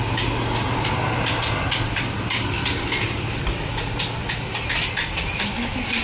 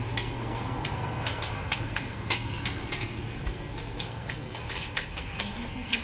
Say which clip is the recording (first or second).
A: first